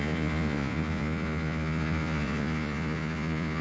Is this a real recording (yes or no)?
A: no